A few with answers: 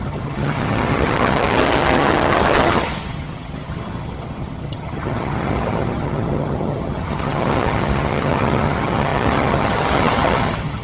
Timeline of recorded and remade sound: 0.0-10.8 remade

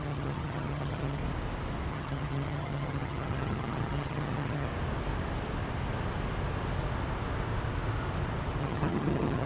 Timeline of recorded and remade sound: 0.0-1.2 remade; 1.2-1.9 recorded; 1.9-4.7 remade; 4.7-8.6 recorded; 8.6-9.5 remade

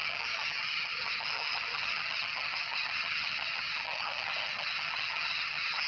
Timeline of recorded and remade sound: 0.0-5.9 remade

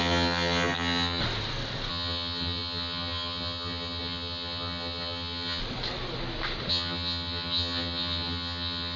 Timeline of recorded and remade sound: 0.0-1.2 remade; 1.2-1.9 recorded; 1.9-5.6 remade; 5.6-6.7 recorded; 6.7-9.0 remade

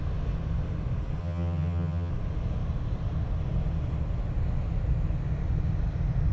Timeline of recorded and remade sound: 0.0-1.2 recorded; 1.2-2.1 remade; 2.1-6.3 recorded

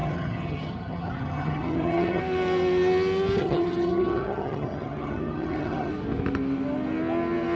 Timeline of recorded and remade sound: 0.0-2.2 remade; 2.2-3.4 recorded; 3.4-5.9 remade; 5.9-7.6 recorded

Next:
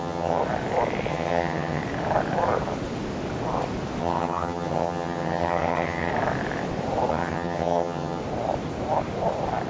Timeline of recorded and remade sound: 0.0-0.4 remade; 0.4-1.1 recorded; 1.1-1.8 remade; 1.8-4.0 recorded; 4.0-6.1 remade; 6.1-7.1 recorded; 7.1-8.2 remade; 8.2-9.7 recorded